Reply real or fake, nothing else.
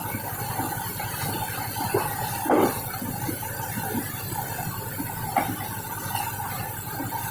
real